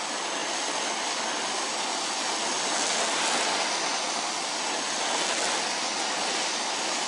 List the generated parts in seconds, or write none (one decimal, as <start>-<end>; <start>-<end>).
none